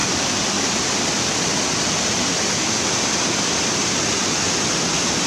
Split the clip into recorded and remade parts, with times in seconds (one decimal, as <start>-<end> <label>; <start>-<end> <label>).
0.0-5.3 recorded